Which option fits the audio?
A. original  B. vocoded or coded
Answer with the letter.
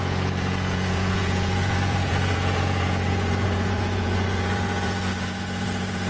B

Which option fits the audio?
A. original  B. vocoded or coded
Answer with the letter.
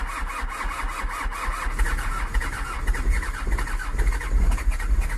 A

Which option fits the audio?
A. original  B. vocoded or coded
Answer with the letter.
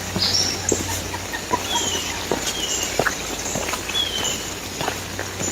A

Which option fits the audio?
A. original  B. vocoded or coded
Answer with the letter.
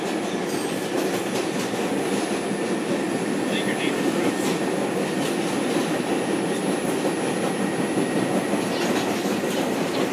A